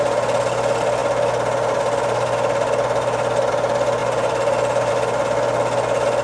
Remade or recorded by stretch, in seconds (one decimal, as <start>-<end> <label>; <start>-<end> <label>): 0.0-6.2 recorded